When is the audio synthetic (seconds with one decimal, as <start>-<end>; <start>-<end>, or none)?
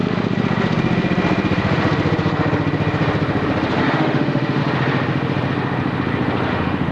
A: 3.8-4.6; 6.5-6.9